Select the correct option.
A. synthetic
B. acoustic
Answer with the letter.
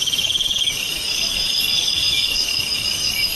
A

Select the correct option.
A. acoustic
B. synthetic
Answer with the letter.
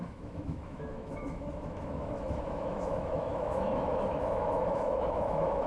B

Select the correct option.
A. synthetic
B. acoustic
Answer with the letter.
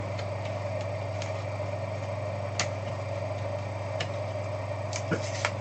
B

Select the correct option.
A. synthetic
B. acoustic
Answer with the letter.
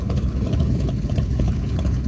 A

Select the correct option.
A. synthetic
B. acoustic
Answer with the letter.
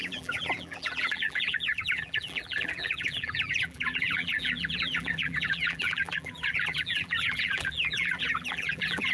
A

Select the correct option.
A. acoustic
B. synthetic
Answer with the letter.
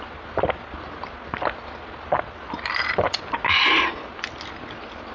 A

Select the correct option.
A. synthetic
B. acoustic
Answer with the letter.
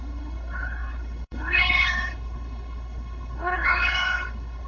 A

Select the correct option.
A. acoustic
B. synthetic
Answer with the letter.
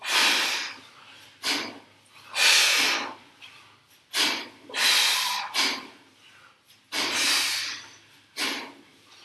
A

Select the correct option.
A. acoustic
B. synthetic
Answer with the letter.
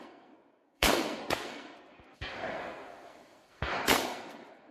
B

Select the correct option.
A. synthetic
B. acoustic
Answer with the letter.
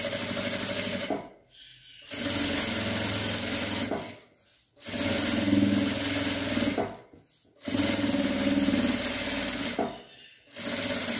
B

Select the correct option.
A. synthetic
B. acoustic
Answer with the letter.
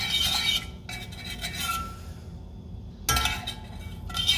B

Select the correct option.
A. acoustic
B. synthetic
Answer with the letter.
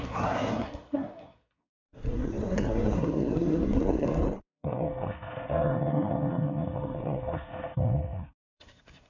B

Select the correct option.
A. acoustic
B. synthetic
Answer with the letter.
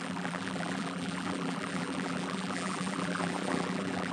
B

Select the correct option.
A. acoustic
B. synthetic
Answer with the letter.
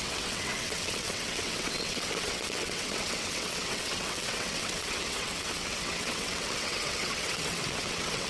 B